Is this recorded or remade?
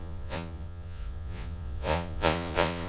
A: remade